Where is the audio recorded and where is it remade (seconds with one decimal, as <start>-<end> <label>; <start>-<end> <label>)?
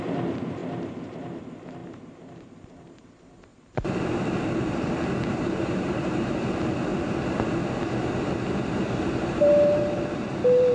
0.0-6.9 remade; 6.9-8.7 recorded; 8.7-10.7 remade